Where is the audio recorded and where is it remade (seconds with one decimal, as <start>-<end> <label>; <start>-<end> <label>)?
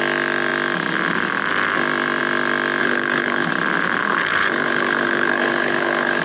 0.0-2.8 recorded; 2.8-3.5 remade; 3.5-4.0 recorded; 4.0-6.2 remade